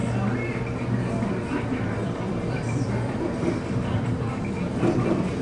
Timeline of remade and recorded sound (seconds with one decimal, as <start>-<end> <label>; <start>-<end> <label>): 0.0-2.0 recorded; 2.0-5.4 remade